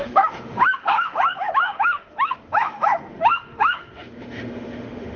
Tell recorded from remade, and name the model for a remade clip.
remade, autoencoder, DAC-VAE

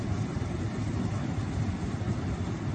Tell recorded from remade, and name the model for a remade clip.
recorded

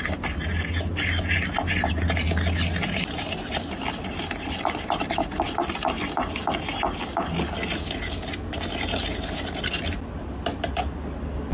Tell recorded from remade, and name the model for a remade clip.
recorded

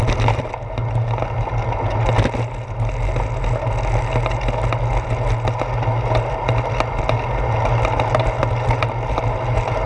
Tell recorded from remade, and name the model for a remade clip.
recorded